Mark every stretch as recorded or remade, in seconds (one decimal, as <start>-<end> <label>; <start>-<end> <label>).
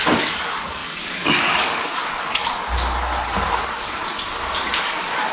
0.0-2.6 remade; 2.6-3.6 recorded; 3.6-4.0 remade; 4.0-4.8 recorded; 4.8-5.3 remade